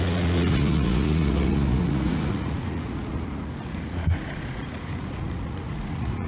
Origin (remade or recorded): remade